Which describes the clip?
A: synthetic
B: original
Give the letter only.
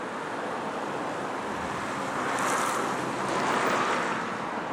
B